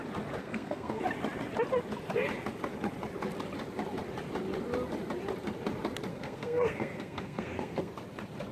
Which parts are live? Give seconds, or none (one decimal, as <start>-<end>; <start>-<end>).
0.0-0.4; 1.0-6.1; 7.9-8.5